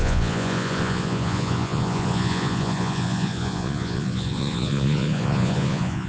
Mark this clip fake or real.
fake